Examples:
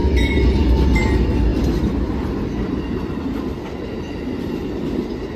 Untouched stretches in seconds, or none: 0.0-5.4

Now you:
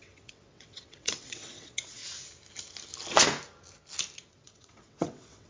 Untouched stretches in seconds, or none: 2.0-4.3